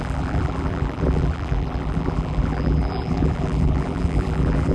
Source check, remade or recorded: remade